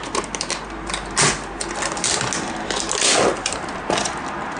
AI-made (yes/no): no